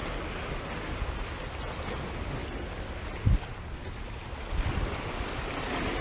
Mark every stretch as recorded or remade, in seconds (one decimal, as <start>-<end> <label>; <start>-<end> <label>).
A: 0.0-6.0 recorded

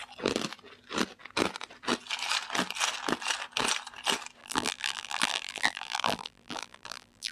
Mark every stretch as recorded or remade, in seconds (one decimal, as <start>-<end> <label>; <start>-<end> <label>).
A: 0.0-4.4 recorded; 4.4-7.3 remade

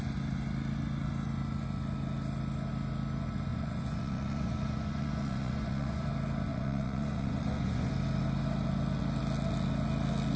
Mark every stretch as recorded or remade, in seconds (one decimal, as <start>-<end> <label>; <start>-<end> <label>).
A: 0.0-3.5 recorded; 3.5-6.1 remade; 6.1-6.5 recorded; 6.5-7.9 remade; 7.9-10.4 recorded